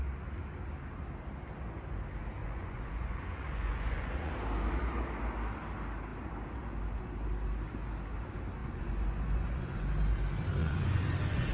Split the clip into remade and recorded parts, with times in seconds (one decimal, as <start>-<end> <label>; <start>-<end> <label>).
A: 0.0-2.4 recorded; 2.4-4.3 remade; 4.3-8.6 recorded; 8.6-9.9 remade; 9.9-10.6 recorded; 10.6-11.5 remade